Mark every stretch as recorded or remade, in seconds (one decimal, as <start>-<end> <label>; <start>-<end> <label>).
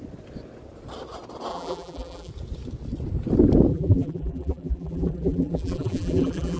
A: 0.0-1.5 recorded; 1.5-2.3 remade; 2.3-3.7 recorded; 3.7-6.6 remade